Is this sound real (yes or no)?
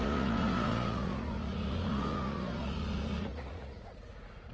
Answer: no